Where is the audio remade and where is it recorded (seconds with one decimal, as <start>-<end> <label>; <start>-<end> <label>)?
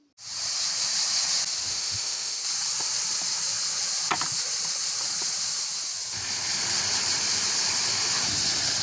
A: 0.0-1.7 recorded; 1.7-2.4 remade; 2.4-8.8 recorded